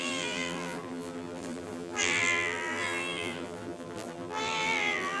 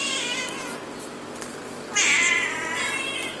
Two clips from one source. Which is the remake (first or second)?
first